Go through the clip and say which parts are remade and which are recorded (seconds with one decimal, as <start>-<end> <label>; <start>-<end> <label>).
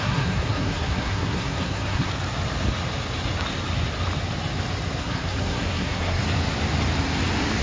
0.0-2.1 remade; 2.1-5.0 recorded; 5.0-6.2 remade; 6.2-7.6 recorded